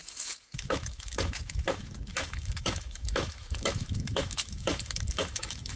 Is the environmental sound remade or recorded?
remade